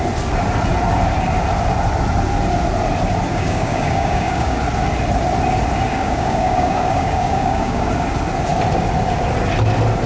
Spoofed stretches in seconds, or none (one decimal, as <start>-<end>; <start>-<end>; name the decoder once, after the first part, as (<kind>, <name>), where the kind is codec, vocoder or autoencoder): 3.3-4.6 (codec, DAC); 5.9-7.9